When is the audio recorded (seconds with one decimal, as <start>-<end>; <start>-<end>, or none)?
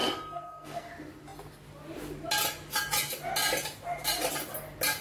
0.9-5.0